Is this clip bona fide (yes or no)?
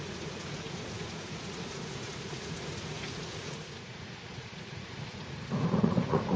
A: no